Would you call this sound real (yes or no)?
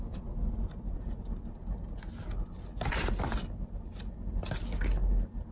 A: yes